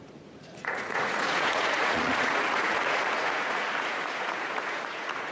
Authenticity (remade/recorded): remade